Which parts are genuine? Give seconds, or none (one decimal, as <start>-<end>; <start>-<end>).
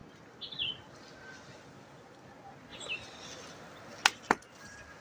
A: 0.0-5.0